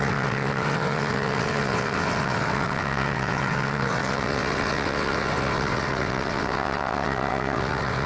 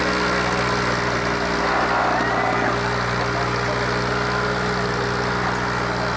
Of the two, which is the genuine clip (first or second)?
second